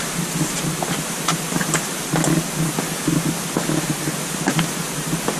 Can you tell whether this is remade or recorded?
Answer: recorded